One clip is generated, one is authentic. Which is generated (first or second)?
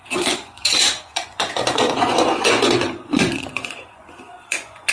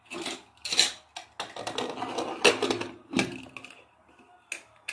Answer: first